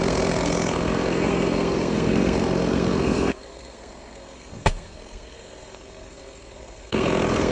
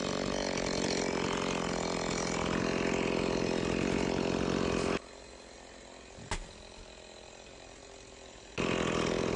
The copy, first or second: first